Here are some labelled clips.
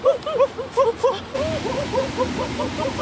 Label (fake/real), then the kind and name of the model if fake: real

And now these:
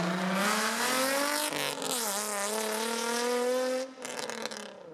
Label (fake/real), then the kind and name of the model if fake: real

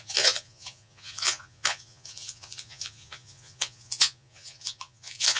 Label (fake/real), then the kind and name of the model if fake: fake, vocoder, Vocos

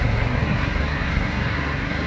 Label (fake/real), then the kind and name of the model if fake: fake, codec, SNAC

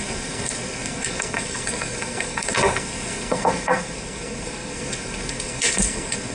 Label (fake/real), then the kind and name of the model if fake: fake, codec, SNAC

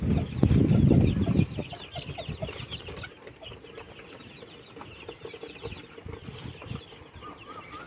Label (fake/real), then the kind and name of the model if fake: real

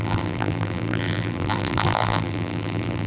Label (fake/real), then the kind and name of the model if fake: fake, vocoder, BigVGAN v2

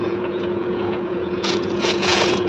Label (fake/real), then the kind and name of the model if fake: fake, vocoder, Vocos